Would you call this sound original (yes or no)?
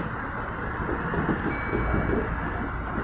yes